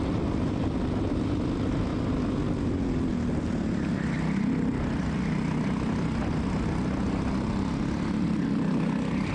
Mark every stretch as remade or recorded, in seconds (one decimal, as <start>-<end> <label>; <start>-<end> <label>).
0.0-9.3 recorded